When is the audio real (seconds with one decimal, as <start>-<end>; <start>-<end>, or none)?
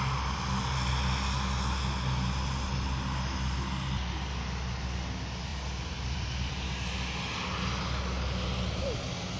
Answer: 0.0-5.5; 6.5-9.4